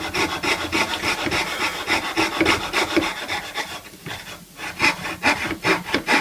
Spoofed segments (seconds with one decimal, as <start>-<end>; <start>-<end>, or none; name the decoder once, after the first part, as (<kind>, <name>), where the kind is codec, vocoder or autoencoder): 3.1-4.0 (vocoder, BigVGAN v2)